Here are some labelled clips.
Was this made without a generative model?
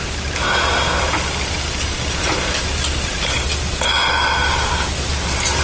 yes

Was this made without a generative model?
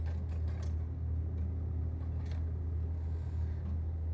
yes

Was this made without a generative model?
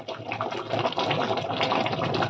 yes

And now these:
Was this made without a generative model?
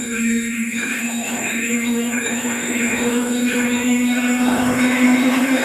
no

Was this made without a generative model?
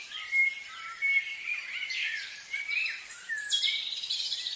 no